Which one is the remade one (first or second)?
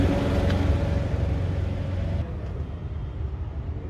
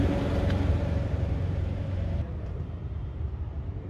second